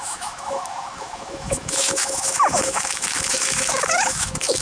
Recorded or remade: remade